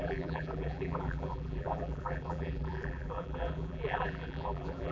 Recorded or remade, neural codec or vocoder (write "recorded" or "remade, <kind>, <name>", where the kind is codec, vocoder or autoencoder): remade, vocoder, BigVGAN v2